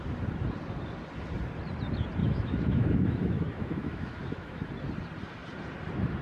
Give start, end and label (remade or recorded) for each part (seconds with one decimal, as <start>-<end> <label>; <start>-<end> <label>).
0.0-2.2 recorded; 2.2-4.7 remade; 4.7-6.2 recorded